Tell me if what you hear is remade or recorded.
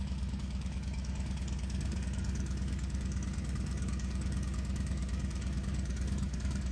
remade